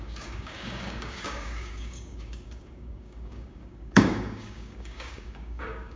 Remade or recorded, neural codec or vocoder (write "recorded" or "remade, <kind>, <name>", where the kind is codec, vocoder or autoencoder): remade, codec, DAC